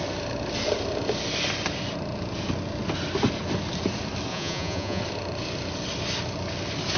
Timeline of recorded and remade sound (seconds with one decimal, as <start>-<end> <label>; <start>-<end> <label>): 0.0-4.3 recorded; 4.3-5.0 remade; 5.0-7.0 recorded